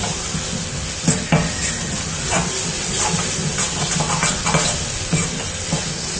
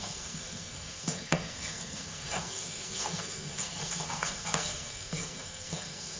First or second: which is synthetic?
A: second